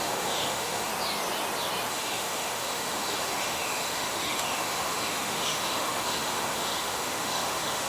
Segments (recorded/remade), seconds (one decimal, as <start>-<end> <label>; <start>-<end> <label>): 0.0-0.9 remade; 0.9-1.9 recorded; 1.9-7.9 remade